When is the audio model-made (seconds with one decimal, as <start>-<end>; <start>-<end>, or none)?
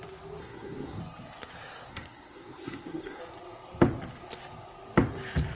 0.4-1.0; 1.9-3.2